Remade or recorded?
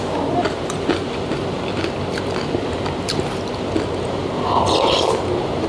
recorded